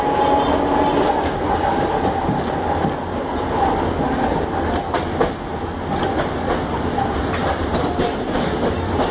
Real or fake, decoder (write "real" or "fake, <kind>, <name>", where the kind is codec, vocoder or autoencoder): real